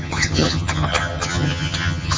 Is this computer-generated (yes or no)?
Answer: yes